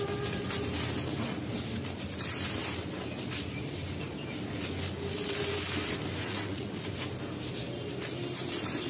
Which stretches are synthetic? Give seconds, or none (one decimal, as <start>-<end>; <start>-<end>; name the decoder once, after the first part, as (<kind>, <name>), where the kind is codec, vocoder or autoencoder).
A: 6.2-6.9 (vocoder, WaveNeXt)